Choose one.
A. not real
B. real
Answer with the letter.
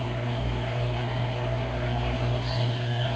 A